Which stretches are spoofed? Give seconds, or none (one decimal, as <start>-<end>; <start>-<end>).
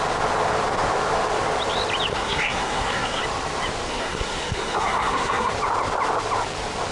2.1-3.2; 3.9-5.5